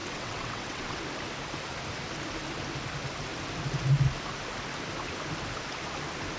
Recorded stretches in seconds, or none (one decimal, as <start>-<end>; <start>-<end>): 1.0-6.4